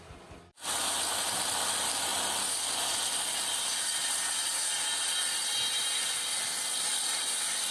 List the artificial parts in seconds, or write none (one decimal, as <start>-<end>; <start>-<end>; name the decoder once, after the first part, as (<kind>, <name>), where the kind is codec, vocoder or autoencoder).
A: none